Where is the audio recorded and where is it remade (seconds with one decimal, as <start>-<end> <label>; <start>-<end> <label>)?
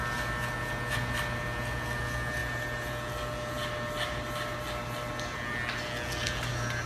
0.0-6.9 recorded